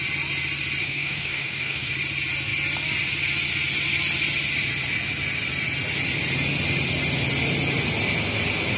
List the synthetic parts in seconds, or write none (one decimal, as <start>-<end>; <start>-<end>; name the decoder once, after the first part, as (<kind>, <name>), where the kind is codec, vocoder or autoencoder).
0.8-1.9 (codec, DAC)